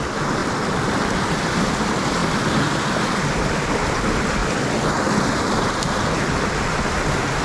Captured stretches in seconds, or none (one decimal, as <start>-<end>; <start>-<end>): 0.0-0.4; 1.1-7.4